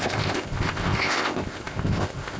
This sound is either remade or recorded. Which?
remade